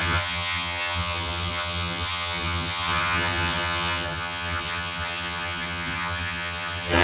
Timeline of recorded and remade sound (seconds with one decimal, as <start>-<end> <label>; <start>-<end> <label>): 0.0-7.0 remade